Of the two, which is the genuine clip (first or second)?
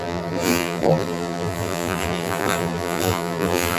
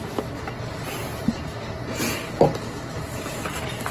second